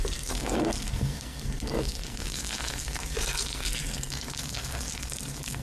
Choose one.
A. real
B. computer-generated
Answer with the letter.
B